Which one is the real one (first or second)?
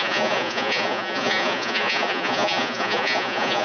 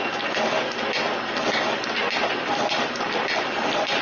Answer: second